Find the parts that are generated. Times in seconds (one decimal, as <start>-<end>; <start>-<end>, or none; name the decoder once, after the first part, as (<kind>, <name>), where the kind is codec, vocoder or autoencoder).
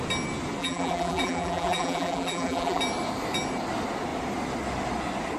0.6-2.8 (vocoder, BigVGAN v2)